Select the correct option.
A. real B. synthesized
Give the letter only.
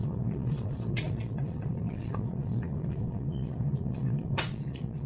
B